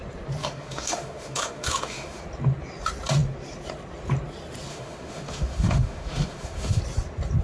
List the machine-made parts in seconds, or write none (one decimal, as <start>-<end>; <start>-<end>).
0.4-2.2; 4.7-6.8